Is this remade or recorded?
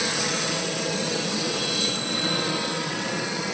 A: remade